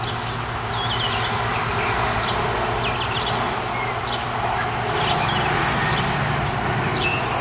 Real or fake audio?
real